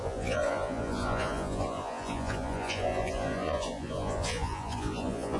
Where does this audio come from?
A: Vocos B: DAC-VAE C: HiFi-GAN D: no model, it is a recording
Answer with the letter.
A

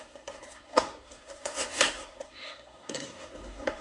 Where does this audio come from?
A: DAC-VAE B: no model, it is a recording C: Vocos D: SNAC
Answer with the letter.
D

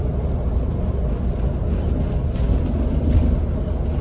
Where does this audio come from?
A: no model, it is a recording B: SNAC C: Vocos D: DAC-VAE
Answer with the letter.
A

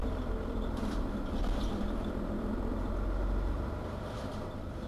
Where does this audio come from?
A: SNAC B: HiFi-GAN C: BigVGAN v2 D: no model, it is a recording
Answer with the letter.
C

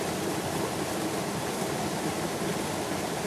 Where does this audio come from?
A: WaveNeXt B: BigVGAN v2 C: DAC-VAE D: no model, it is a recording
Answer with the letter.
D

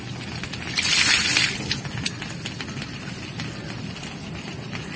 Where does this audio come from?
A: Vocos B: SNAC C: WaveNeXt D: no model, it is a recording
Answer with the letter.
D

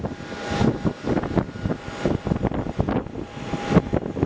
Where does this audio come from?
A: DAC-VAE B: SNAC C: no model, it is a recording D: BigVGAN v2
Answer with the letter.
C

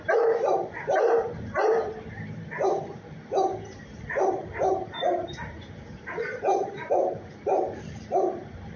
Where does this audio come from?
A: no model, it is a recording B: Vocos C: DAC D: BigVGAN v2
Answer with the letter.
D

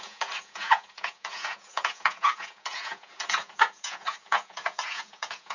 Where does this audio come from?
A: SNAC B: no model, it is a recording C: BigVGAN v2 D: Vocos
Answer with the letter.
D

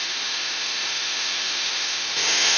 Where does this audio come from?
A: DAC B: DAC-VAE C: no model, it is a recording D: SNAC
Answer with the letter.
B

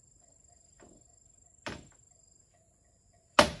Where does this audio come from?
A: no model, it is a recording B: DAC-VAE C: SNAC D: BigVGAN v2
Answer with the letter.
A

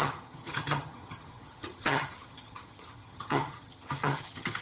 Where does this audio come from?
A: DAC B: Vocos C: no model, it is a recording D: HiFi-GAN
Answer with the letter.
D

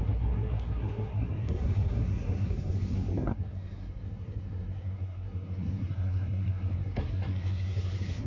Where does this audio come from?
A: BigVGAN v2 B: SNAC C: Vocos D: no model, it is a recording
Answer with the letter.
B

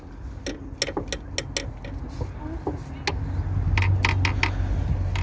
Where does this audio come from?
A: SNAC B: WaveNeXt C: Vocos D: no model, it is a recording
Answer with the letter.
D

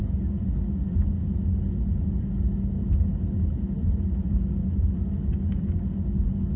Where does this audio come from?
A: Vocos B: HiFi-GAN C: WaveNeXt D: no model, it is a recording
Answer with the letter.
D